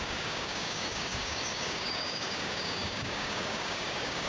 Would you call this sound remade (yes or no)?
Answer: yes